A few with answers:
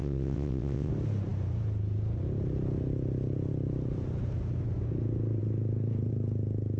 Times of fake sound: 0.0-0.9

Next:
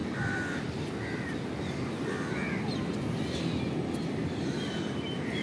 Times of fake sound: none

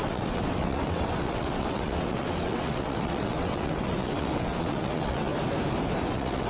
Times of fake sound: 0.0-5.3; 6.1-6.5

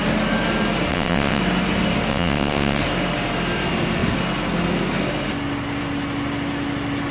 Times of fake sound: 0.9-1.4; 2.1-2.8

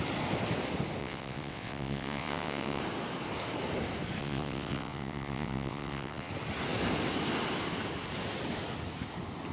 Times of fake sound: 1.0-2.8; 4.2-6.3

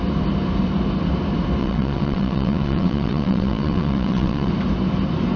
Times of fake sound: 1.6-4.5